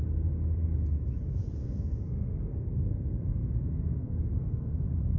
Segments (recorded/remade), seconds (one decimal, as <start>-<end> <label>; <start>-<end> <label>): 0.0-1.6 recorded; 1.6-4.7 remade; 4.7-5.2 recorded

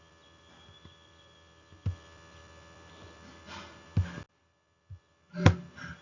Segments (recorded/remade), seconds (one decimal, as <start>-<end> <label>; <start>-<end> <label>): 0.0-6.0 recorded

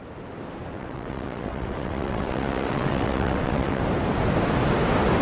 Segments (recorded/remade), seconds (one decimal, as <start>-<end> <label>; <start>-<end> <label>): 0.0-0.7 recorded; 0.7-3.8 remade; 3.8-5.2 recorded